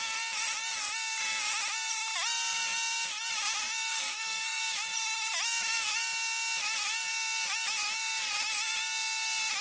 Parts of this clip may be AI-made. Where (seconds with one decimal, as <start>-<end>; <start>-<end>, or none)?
3.9-4.6